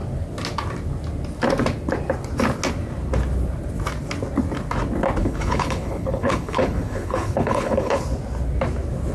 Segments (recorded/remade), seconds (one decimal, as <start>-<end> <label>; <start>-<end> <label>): 0.0-5.2 recorded; 5.2-8.0 remade; 8.0-9.1 recorded

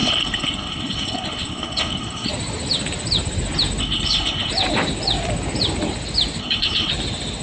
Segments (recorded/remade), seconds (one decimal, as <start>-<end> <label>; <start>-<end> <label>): 0.0-2.3 remade; 2.3-3.8 recorded; 3.8-4.5 remade; 4.5-6.4 recorded; 6.4-6.9 remade; 6.9-7.4 recorded

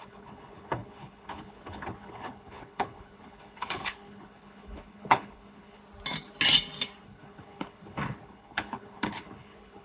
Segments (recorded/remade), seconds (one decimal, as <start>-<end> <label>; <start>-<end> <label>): 0.0-5.8 remade; 5.8-7.0 recorded; 7.0-9.8 remade

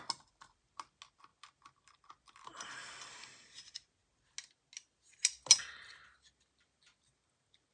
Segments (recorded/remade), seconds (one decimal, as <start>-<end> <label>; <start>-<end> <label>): 0.0-7.7 recorded

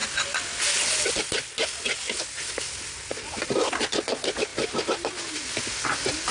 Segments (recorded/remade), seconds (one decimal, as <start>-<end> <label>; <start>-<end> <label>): 0.0-6.3 recorded

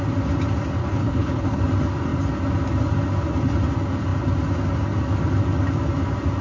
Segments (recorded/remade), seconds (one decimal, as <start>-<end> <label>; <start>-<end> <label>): 0.0-0.8 recorded; 0.8-1.6 remade; 1.6-6.4 recorded